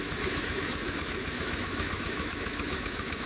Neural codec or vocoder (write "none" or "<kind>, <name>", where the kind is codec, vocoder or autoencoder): autoencoder, DAC-VAE